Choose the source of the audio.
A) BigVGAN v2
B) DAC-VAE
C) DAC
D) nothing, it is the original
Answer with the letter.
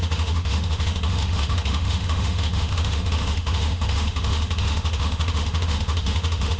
B